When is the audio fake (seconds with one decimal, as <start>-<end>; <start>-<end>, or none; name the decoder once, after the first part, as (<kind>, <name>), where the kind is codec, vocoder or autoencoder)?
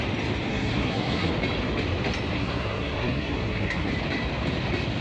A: 0.5-1.3 (codec, SNAC); 2.4-3.9